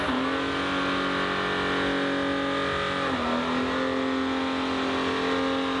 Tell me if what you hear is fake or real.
real